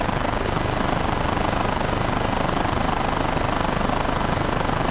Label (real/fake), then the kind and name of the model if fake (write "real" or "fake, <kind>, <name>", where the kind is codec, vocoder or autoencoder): real